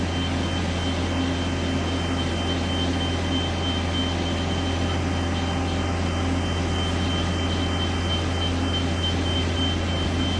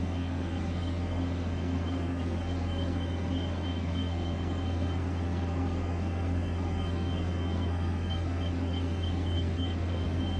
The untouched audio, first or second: first